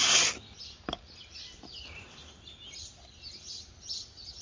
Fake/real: real